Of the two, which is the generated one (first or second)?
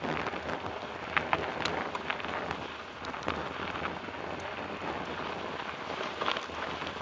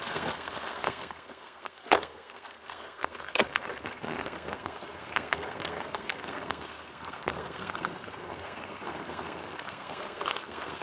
second